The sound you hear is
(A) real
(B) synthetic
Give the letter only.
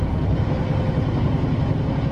A